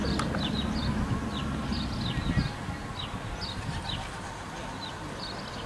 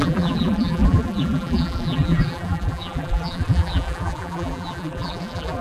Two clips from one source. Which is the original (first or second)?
first